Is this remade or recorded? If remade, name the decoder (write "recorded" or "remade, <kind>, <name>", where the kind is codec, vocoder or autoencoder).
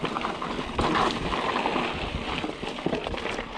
recorded